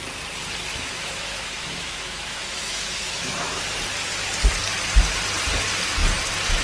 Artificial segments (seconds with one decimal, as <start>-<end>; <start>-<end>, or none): 0.7-3.6